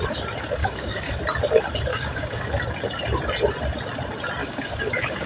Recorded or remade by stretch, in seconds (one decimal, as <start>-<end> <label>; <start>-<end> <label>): 0.0-0.6 recorded; 0.6-1.1 remade; 1.1-1.9 recorded; 1.9-2.4 remade; 2.4-4.4 recorded; 4.4-5.3 remade